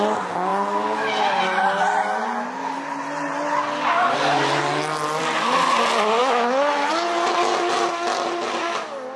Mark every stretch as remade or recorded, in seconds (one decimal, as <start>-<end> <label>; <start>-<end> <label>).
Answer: 0.0-6.2 recorded; 6.2-6.9 remade; 6.9-9.2 recorded